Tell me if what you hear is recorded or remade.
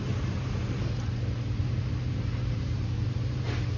remade